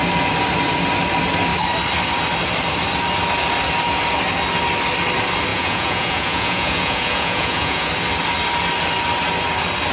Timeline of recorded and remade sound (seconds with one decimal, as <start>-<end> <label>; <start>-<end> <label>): 0.0-5.5 recorded; 5.5-7.9 remade; 7.9-9.9 recorded